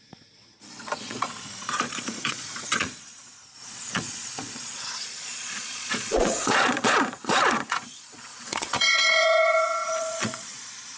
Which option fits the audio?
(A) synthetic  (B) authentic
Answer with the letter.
A